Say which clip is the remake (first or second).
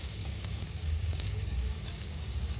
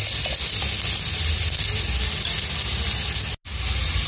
first